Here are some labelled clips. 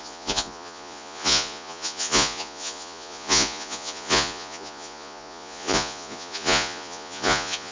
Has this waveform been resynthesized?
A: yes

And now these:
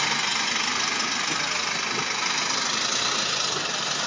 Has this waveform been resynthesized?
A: no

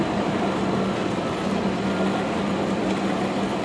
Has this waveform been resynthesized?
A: no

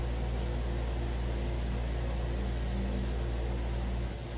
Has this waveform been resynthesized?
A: no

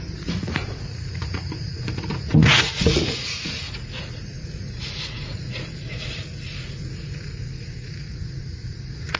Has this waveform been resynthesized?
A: yes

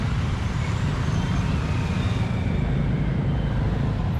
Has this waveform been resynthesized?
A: no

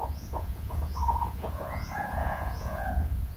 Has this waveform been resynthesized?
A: yes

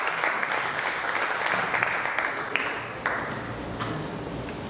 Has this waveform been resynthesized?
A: no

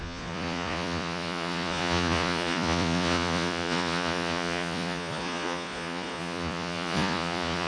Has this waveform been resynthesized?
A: yes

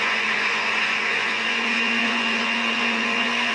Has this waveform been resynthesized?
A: yes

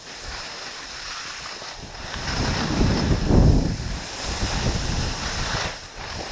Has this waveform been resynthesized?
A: no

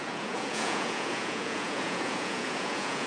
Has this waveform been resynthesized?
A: yes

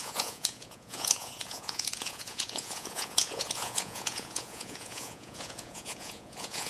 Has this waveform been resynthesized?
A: yes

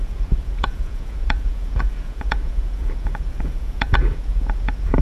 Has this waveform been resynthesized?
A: yes